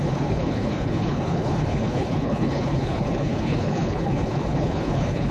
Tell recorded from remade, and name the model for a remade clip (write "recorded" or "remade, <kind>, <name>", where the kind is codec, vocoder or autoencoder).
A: remade, codec, HILCodec